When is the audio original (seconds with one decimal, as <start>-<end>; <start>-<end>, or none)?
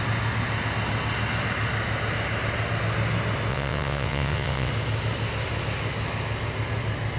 0.0-3.5; 4.7-7.2